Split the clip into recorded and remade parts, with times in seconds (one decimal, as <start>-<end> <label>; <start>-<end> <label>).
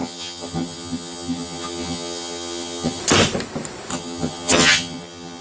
0.0-3.0 remade; 3.0-3.9 recorded; 3.9-5.4 remade